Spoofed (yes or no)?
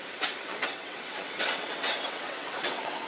yes